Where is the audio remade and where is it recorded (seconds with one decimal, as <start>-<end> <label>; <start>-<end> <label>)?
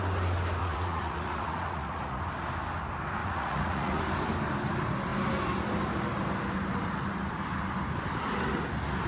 0.0-0.6 recorded; 0.6-2.2 remade; 2.2-3.2 recorded; 3.2-4.0 remade; 4.0-9.1 recorded